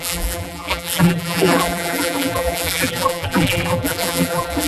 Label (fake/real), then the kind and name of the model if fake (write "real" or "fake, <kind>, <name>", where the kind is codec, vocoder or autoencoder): fake, vocoder, BigVGAN v2